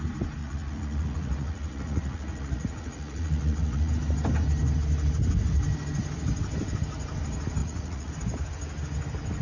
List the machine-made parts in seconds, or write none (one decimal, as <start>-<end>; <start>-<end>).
0.4-3.9; 7.6-8.1